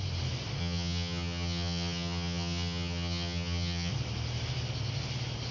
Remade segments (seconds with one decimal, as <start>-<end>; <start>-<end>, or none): 0.6-3.9